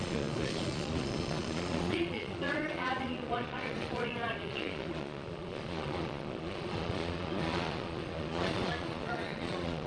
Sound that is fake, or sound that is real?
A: fake